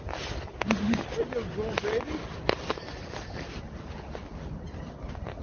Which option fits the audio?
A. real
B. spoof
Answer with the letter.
A